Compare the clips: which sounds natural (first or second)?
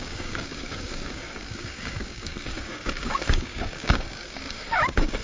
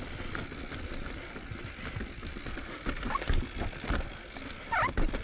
second